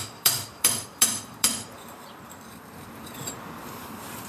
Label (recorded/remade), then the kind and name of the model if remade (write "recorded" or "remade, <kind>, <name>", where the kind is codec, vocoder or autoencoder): remade, vocoder, BigVGAN v2